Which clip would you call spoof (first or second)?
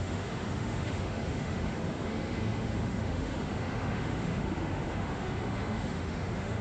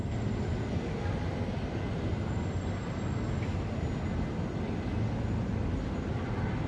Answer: first